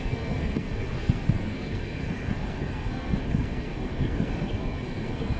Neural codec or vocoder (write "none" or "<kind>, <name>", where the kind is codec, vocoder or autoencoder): codec, SNAC